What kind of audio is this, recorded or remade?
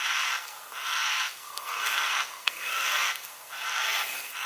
remade